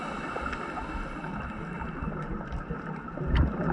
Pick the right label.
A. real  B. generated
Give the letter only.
A